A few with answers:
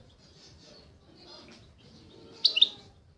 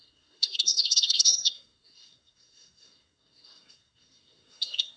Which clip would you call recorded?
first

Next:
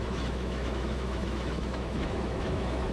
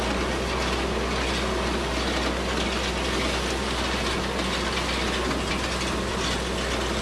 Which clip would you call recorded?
second